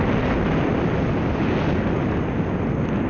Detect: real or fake real